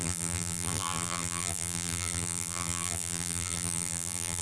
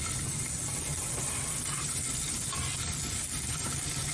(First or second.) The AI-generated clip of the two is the first